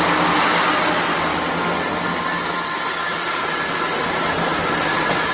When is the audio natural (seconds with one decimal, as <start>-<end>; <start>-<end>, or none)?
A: 0.0-4.5